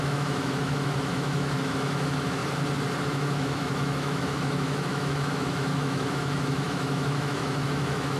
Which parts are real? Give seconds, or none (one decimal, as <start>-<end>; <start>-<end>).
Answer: 2.4-3.0

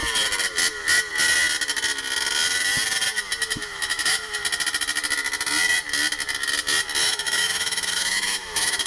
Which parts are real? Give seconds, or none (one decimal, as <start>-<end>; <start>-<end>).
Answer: 0.0-3.5; 4.4-7.0

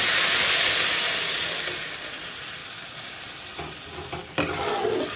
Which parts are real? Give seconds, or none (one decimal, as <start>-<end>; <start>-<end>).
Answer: 0.0-5.2

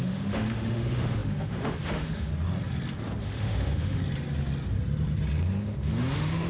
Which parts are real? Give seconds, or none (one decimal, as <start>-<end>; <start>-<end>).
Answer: 2.3-3.2; 4.0-5.6

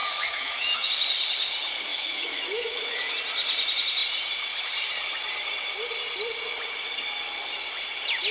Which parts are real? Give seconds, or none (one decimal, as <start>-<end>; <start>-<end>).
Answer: 0.9-1.9; 3.1-8.3

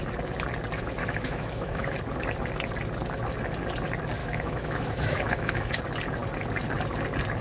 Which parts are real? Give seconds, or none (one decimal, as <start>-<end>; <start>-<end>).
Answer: 0.0-1.0; 2.0-4.2; 5.8-7.4